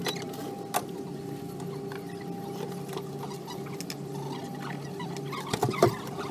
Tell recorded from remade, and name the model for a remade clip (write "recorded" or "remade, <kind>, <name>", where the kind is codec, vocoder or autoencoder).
recorded